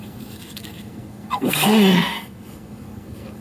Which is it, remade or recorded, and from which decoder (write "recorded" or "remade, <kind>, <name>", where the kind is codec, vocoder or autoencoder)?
remade, codec, SNAC